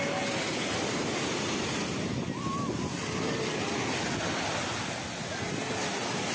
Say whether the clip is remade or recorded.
recorded